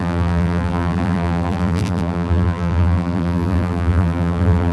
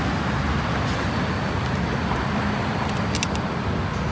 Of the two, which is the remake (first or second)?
first